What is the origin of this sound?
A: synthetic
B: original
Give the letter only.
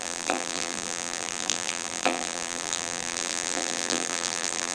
A